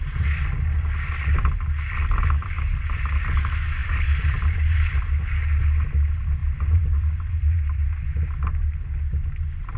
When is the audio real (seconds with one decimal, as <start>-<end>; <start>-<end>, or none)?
0.0-3.8; 5.0-6.4; 8.1-9.8